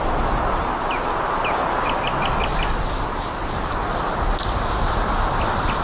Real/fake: real